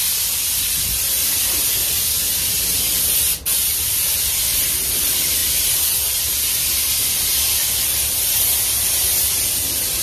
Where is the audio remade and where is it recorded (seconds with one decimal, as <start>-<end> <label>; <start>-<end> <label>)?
0.0-10.0 recorded